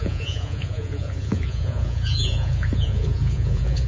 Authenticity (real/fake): fake